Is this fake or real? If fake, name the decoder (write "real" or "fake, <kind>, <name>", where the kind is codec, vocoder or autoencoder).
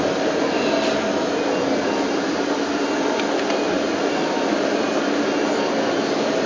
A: real